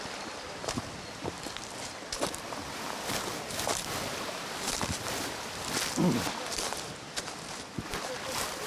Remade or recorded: remade